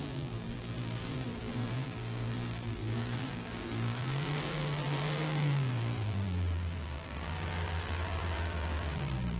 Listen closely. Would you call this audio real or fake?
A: fake